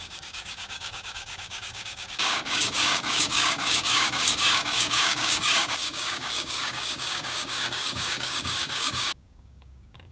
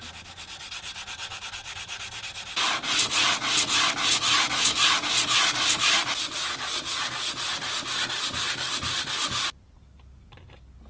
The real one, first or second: second